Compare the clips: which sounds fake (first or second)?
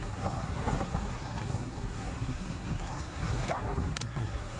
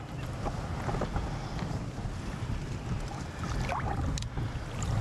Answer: first